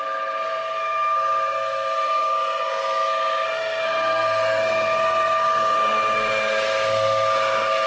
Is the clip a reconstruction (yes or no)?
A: yes